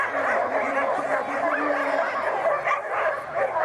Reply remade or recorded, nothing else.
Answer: recorded